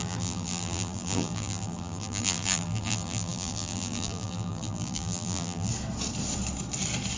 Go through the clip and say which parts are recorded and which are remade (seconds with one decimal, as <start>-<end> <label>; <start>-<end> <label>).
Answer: 0.0-5.7 remade; 5.7-7.2 recorded